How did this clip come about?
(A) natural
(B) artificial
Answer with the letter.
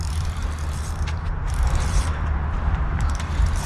B